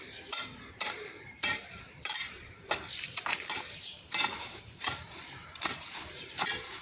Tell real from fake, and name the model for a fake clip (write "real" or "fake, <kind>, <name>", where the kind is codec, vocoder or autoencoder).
fake, vocoder, BigVGAN v2